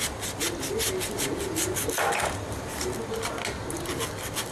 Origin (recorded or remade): recorded